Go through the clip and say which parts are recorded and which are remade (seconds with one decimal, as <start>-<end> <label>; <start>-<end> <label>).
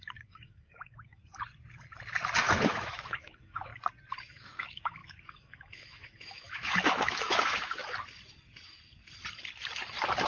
0.0-1.2 remade; 1.2-2.4 recorded; 2.4-3.7 remade; 3.7-4.3 recorded; 4.3-7.8 remade; 7.8-10.3 recorded